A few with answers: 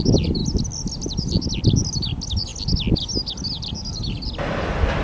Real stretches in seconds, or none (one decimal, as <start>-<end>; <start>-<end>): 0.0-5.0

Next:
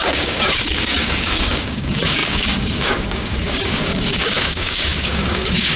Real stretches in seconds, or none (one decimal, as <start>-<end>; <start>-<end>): none

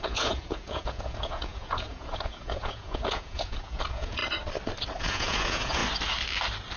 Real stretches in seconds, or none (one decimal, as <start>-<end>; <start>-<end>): 4.2-5.0; 5.8-6.8

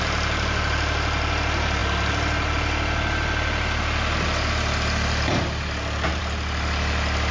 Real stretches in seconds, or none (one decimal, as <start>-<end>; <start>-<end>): 0.0-7.3